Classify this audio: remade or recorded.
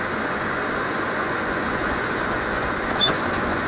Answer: remade